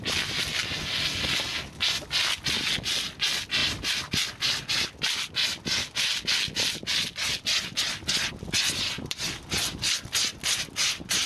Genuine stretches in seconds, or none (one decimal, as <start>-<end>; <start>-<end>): 0.0-11.3